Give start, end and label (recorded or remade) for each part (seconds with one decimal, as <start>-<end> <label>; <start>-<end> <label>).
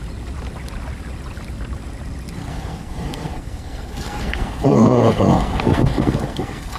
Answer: 0.0-2.4 recorded; 2.4-6.8 remade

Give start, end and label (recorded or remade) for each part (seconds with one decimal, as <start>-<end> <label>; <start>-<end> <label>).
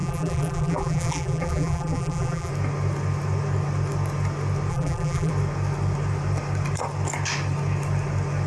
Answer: 0.0-2.5 remade; 2.5-4.7 recorded; 4.7-5.3 remade; 5.3-8.5 recorded